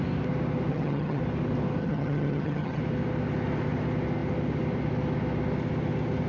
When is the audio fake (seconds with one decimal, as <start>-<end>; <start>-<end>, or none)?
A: 0.7-1.2; 1.8-2.8